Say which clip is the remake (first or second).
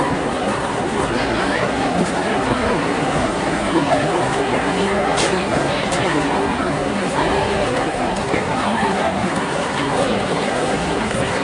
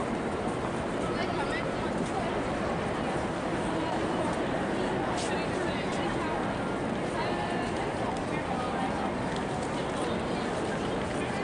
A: first